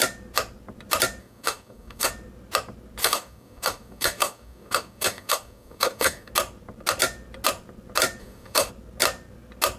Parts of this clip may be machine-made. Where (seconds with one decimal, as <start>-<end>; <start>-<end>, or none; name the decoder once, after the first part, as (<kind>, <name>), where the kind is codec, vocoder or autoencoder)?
1.2-2.1 (codec, DAC); 3.0-6.3; 8.2-8.7